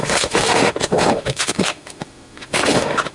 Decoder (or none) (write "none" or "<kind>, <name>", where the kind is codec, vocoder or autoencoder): autoencoder, DAC-VAE